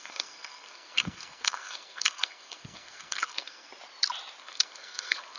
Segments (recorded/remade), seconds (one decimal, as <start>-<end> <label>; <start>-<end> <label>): 0.0-3.7 remade; 3.7-4.4 recorded; 4.4-5.4 remade